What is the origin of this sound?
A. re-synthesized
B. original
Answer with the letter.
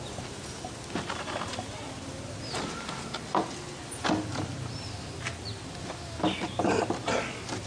B